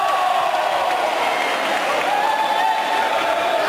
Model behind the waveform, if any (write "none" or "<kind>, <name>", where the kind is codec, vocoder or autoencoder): none